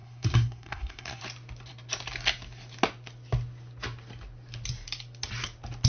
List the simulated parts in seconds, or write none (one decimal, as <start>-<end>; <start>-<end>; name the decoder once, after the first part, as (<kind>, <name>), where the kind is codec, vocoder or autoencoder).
0.0-1.2 (codec, SNAC)

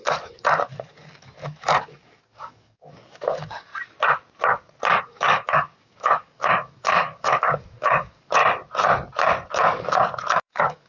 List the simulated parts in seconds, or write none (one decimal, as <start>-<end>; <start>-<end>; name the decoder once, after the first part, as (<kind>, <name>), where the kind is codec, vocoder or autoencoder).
0.0-3.7 (codec, DAC); 5.0-8.4; 9.5-10.9

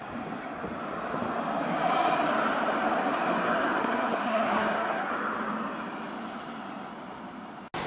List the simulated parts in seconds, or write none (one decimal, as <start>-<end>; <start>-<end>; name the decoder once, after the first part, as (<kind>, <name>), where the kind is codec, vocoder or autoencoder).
3.8-5.1 (codec, SNAC)

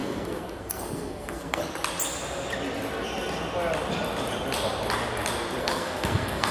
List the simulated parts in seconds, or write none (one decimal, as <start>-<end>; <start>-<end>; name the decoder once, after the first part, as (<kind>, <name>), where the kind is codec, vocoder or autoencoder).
0.0-1.6 (codec, SNAC); 5.6-6.5

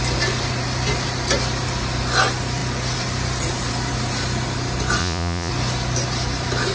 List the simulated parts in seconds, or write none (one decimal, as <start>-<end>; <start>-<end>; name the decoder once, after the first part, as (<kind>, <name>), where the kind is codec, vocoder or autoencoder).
5.0-5.5 (vocoder, Vocos)

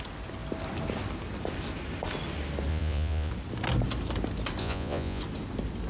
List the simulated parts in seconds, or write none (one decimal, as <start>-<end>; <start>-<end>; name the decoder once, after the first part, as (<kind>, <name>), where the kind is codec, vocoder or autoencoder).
2.7-3.3 (vocoder, Vocos); 4.6-5.2

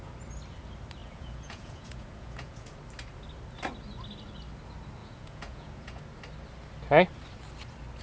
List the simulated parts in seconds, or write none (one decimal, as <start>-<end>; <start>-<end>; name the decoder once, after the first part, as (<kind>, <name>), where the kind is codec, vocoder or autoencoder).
1.0-2.8 (vocoder, Vocos); 5.0-6.0

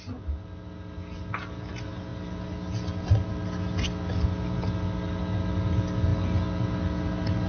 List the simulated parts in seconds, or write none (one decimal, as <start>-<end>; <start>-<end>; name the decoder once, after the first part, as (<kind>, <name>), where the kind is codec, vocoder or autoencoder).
none